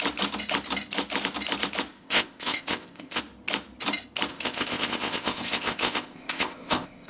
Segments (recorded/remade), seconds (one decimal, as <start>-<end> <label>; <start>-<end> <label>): 0.0-1.9 recorded; 1.9-3.2 remade; 3.2-4.3 recorded; 4.3-7.1 remade